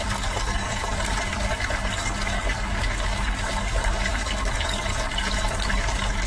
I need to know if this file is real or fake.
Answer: fake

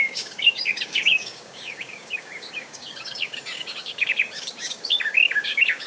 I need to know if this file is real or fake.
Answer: fake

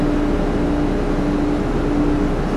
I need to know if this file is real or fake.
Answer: real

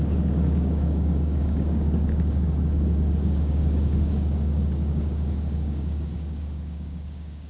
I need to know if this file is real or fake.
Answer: fake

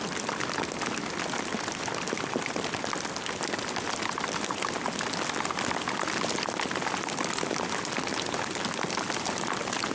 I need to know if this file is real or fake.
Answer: real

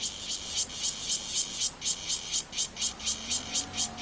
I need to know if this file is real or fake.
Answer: real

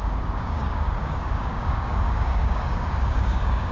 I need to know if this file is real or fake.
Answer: fake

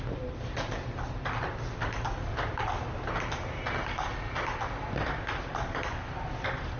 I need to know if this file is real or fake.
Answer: real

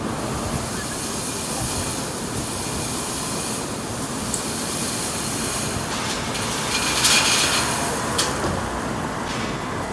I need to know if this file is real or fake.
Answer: real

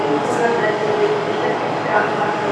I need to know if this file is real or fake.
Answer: fake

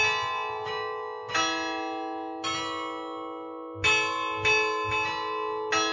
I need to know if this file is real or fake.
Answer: real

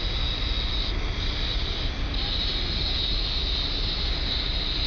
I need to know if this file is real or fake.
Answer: real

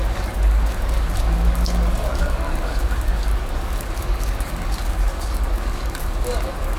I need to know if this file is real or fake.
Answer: fake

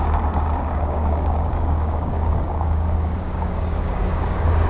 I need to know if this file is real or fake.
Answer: fake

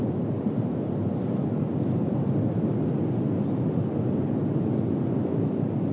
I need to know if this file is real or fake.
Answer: real